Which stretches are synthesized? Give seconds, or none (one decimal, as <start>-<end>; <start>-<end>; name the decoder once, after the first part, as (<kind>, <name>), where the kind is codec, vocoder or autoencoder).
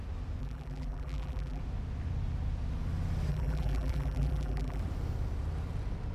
0.4-1.6 (vocoder, BigVGAN v2); 3.3-4.8